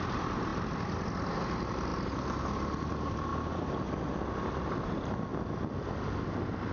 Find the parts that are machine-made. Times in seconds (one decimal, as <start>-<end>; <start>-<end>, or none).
none